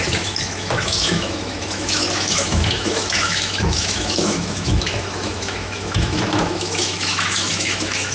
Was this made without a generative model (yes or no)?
no